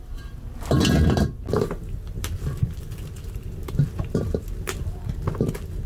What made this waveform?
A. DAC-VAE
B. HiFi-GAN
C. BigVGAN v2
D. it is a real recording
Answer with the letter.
D